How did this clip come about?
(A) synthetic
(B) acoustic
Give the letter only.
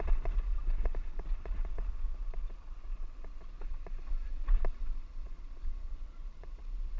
A